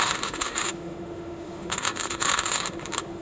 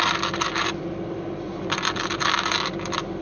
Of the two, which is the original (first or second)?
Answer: second